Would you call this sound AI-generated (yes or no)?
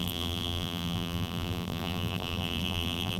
yes